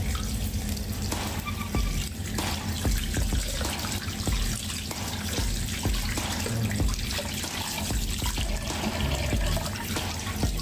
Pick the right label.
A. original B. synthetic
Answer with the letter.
A